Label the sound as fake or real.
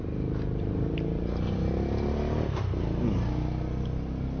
real